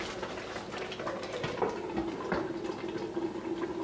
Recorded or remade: recorded